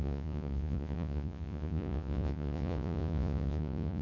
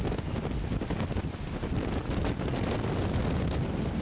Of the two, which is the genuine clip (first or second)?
second